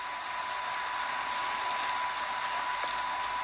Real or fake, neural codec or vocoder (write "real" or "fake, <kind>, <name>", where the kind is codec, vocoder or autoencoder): real